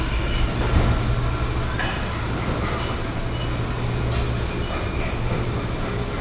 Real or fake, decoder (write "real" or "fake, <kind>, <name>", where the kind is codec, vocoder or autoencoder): real